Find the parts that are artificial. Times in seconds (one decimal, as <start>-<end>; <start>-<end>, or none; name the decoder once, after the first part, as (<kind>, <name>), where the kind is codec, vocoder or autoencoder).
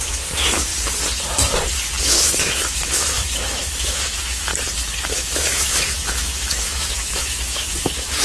0.0-0.7 (autoencoder, DAC-VAE); 2.0-4.5; 5.0-8.2